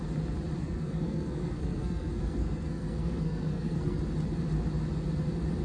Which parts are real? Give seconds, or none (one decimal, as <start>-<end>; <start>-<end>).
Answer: 0.0-0.6; 4.0-5.6